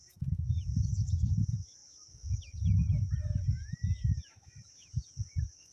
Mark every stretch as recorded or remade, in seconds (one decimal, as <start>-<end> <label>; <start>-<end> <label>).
0.0-5.7 remade